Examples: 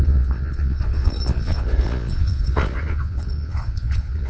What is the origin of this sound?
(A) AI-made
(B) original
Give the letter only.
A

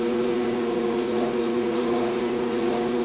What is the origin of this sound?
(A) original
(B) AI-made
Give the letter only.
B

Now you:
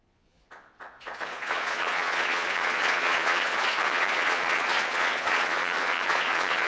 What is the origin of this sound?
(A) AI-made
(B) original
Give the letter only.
A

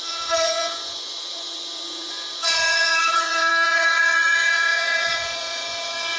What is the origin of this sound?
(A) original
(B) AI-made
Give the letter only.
B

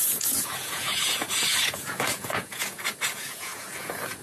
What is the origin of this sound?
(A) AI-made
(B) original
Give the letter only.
A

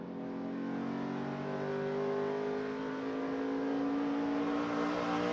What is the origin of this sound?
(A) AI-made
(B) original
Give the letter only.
B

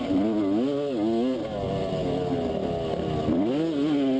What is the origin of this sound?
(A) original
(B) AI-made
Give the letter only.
A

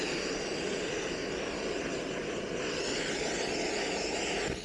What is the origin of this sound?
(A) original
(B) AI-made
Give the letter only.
A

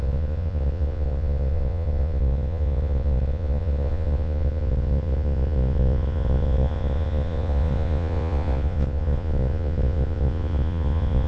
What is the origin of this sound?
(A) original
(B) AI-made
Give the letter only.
B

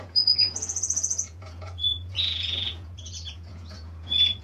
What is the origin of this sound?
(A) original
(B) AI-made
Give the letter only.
B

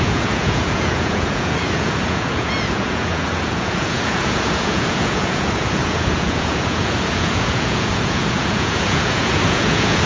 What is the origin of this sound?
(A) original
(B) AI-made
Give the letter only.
B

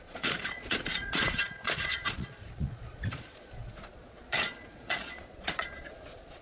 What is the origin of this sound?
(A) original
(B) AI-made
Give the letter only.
B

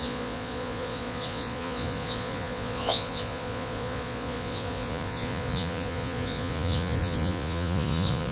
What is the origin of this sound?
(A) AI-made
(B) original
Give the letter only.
A